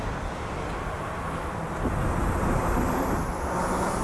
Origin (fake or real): real